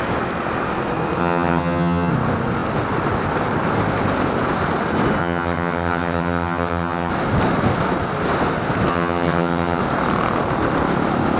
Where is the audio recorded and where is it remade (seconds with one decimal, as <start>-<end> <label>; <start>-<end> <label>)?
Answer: 0.0-1.2 recorded; 1.2-2.1 remade; 2.1-5.2 recorded; 5.2-7.1 remade; 7.1-8.9 recorded; 8.9-9.8 remade; 9.8-11.4 recorded